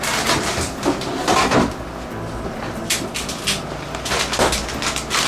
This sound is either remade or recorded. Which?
recorded